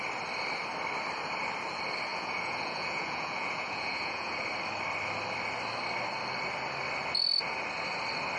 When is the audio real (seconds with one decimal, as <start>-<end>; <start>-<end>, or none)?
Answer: 0.0-2.1; 4.4-8.4